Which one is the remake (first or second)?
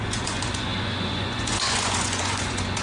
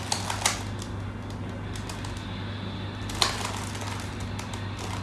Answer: first